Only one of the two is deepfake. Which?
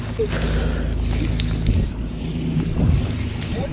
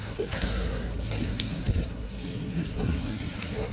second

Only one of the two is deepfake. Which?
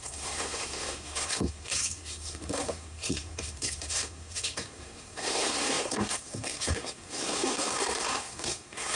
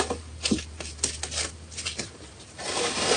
first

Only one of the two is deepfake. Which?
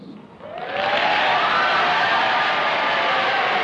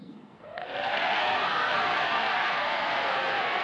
second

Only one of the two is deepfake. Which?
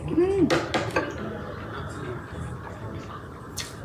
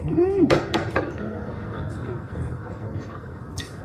second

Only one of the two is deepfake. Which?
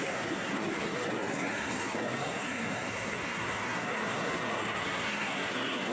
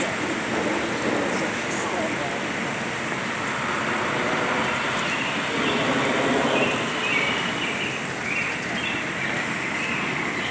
first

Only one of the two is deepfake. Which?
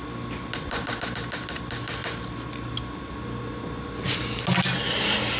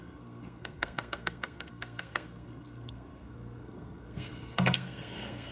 second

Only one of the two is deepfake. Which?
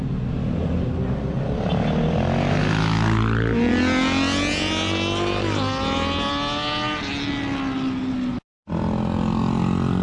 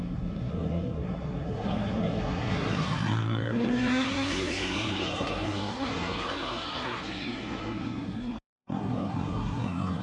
second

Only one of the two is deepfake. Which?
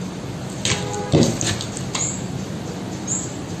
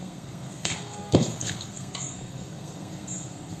second